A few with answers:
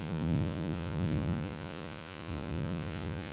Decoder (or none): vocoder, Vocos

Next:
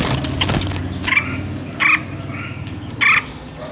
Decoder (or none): none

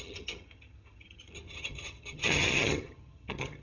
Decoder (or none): vocoder, HiFi-GAN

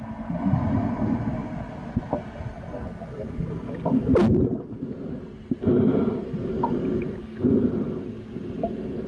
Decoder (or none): none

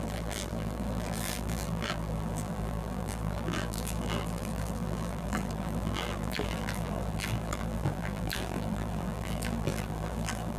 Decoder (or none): vocoder, BigVGAN v2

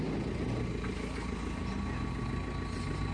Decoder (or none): none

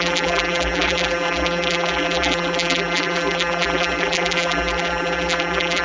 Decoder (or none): vocoder, BigVGAN v2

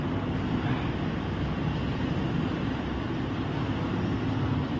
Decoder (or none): none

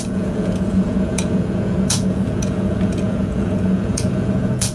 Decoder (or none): vocoder, Vocos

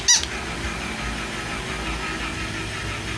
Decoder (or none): none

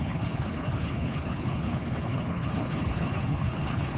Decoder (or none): codec, HILCodec